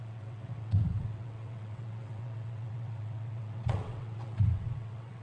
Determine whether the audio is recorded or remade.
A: remade